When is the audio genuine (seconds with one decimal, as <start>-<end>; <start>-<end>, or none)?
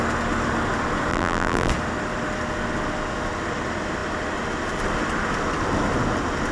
0.0-1.1; 1.7-6.5